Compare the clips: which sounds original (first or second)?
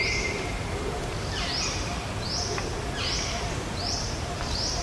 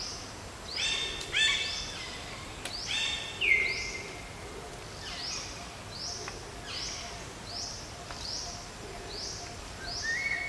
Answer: second